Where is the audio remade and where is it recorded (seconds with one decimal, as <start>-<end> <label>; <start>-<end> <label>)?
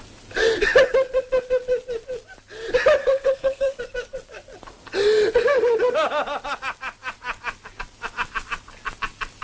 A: 0.0-3.0 recorded; 3.0-3.8 remade; 3.8-9.4 recorded